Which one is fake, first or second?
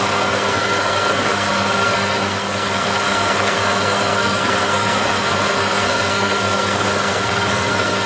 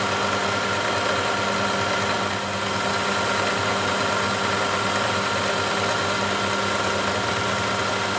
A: first